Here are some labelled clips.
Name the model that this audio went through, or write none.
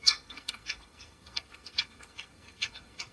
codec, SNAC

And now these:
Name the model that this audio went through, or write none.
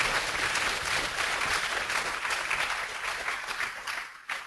none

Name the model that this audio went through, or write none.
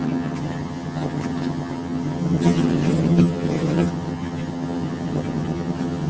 vocoder, HiFi-GAN